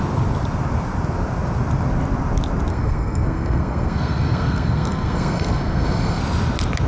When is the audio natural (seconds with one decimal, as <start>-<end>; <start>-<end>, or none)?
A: 0.0-2.7; 6.2-6.9